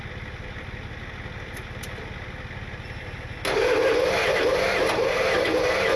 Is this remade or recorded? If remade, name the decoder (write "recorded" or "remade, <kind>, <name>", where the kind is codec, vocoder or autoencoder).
recorded